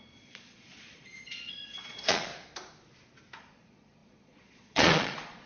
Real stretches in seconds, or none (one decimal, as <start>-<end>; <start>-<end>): 2.3-3.4

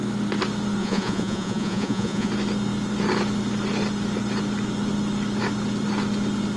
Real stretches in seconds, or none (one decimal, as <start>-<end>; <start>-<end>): 0.0-0.8; 2.3-6.6

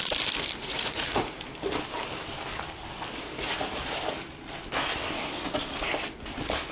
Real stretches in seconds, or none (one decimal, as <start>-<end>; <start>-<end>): 0.0-0.6; 1.4-6.7